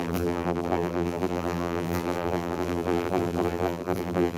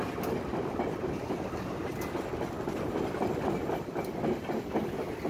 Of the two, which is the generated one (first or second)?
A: first